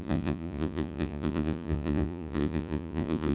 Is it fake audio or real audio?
fake